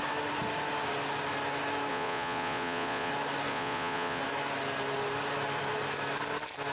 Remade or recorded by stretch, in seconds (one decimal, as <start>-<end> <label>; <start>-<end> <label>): 0.0-1.9 recorded; 1.9-3.1 remade; 3.1-3.5 recorded; 3.5-4.2 remade; 4.2-6.7 recorded